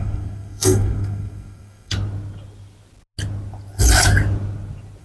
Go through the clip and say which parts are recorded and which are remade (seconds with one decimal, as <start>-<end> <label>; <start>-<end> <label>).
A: 0.0-1.9 remade; 1.9-5.0 recorded